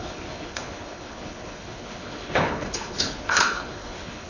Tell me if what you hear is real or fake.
fake